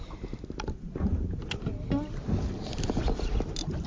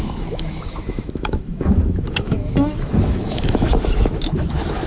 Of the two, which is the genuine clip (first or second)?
first